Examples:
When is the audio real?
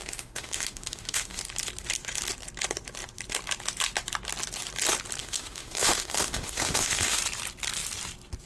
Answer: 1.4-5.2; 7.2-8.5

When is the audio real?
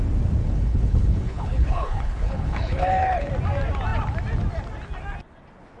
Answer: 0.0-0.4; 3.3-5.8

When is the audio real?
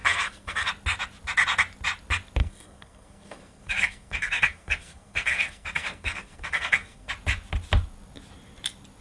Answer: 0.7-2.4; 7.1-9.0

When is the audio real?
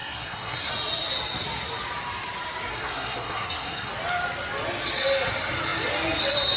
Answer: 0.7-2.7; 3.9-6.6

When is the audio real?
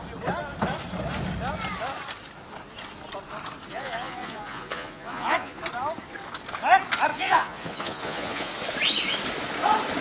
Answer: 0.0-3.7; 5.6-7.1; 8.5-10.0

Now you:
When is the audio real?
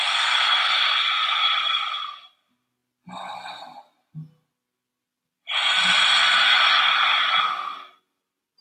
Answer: 0.0-8.6